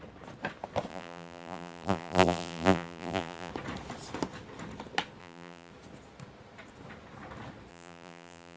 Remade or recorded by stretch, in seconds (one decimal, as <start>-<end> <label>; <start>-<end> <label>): 0.0-0.9 recorded; 0.9-3.5 remade; 3.5-5.2 recorded; 5.2-5.7 remade; 5.7-7.7 recorded; 7.7-8.6 remade